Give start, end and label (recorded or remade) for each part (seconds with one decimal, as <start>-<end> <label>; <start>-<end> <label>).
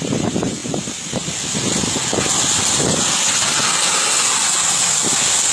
0.0-5.5 recorded